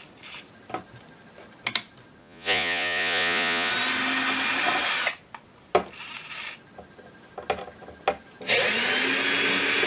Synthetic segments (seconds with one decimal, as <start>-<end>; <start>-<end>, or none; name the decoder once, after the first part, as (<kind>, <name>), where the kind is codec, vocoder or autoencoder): 2.2-3.7 (vocoder, Vocos)